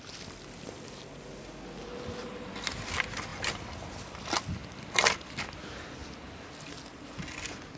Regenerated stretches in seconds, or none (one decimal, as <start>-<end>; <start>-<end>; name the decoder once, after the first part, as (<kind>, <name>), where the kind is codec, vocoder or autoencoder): 4.6-5.4 (vocoder, BigVGAN v2)